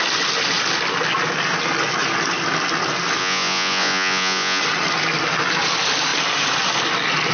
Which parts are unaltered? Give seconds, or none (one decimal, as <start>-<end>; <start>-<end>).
0.0-3.2; 4.6-7.3

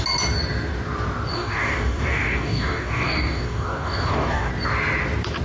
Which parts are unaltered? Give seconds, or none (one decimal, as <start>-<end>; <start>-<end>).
0.0-1.3; 4.5-5.4